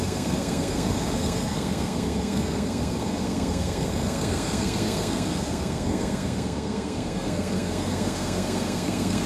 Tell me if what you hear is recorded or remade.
remade